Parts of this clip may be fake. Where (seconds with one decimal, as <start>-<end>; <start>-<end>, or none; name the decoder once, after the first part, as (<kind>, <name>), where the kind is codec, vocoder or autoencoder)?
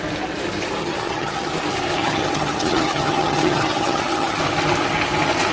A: 0.8-1.5 (vocoder, HiFi-GAN); 2.0-4.4